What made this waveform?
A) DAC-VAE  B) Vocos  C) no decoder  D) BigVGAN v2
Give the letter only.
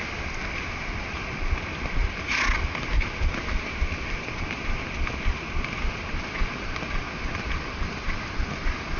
C